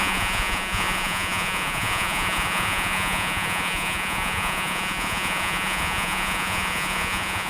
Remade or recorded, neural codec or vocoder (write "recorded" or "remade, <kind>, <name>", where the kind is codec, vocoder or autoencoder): remade, vocoder, Vocos